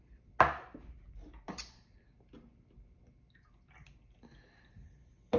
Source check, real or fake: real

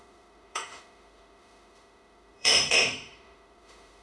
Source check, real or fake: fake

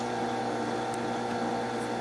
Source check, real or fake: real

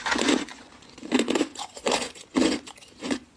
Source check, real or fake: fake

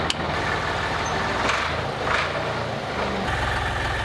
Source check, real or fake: real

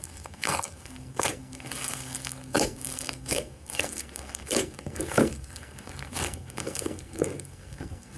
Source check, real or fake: fake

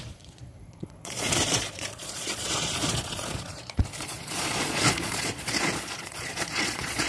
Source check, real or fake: fake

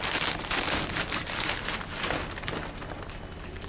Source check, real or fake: real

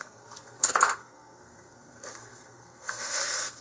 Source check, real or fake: fake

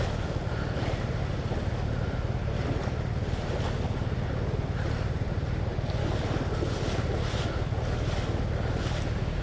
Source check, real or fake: real